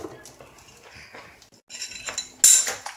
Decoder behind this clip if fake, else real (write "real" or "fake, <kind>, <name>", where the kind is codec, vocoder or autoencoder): real